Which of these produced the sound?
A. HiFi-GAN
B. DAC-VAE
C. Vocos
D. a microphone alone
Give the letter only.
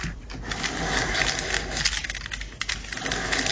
D